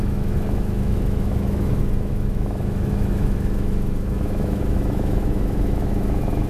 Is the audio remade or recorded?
remade